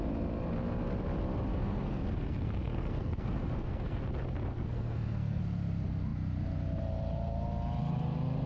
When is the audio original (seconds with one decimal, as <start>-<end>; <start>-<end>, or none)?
0.0-1.5; 4.0-4.5; 5.4-8.5